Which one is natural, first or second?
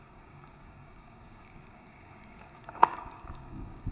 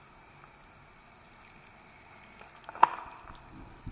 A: second